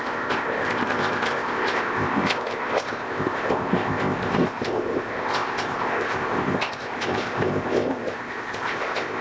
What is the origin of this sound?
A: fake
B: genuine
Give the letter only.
A